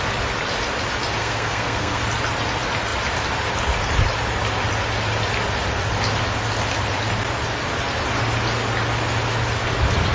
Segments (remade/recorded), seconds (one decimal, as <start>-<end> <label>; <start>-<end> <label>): 0.0-1.2 recorded; 1.2-2.0 remade; 2.0-10.1 recorded